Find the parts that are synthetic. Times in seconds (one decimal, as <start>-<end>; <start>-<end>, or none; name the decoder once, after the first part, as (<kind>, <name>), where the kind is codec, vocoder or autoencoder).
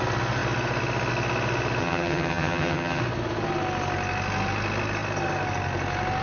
1.8-3.0 (vocoder, HiFi-GAN)